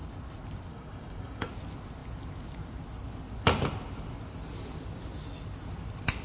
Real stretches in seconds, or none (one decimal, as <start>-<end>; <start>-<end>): 0.0-0.7; 1.5-6.2